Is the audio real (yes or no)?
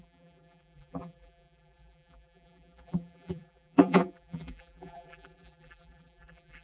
no